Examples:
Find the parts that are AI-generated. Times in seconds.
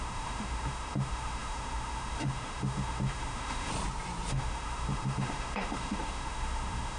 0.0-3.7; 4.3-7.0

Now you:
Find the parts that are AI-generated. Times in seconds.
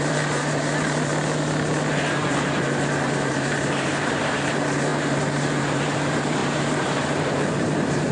0.0-1.1; 1.9-8.1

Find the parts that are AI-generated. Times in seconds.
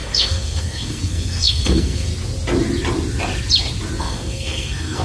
0.0-2.1; 4.0-5.0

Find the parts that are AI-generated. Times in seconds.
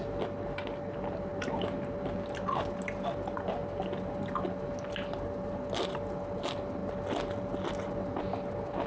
none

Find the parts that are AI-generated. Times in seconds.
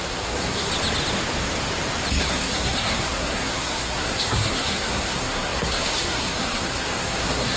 0.0-0.7; 2.2-7.6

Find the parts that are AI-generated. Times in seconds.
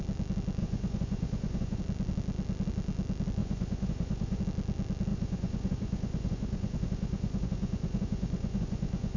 0.6-1.8; 3.4-4.4; 5.1-9.2